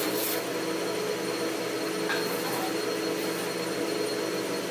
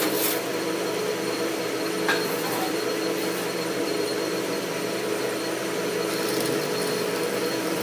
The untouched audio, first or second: first